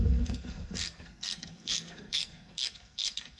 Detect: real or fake fake